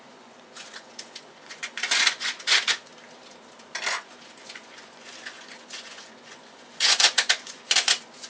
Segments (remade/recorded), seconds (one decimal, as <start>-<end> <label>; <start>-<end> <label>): 0.0-2.9 remade; 2.9-3.9 recorded; 3.9-8.3 remade